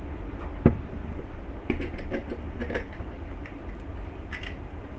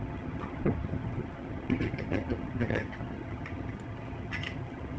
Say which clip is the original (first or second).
first